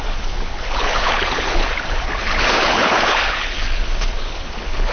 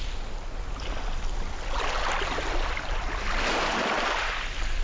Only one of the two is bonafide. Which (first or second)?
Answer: second